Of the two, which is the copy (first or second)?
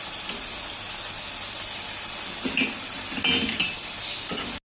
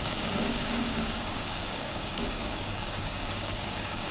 second